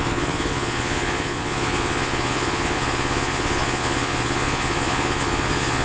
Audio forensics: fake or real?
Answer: fake